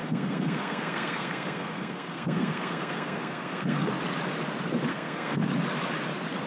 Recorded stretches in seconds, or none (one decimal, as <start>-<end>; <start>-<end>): 3.9-4.9; 5.5-6.5